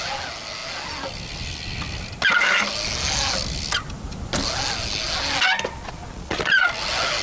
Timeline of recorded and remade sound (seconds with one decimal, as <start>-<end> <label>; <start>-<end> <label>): 0.0-5.8 recorded; 5.8-6.5 remade; 6.5-7.2 recorded